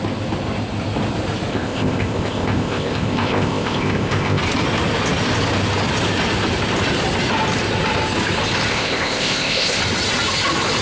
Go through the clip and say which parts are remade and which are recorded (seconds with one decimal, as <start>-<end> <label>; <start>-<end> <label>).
0.0-1.5 recorded; 1.5-4.4 remade; 4.4-8.7 recorded; 8.7-9.8 remade; 9.8-10.8 recorded